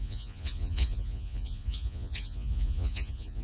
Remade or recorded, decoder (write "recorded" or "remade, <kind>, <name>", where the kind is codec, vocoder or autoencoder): remade, vocoder, Vocos